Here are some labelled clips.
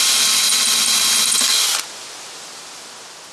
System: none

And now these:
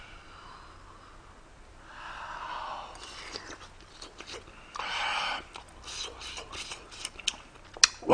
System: none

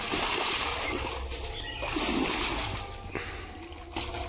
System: none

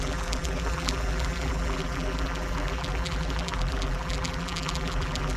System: vocoder, BigVGAN v2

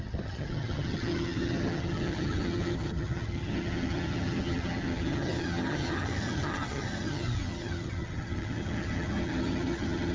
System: vocoder, HiFi-GAN